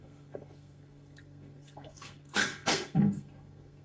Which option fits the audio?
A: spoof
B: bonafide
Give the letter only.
A